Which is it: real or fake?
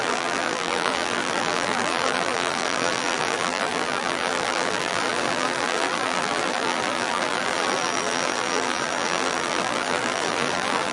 fake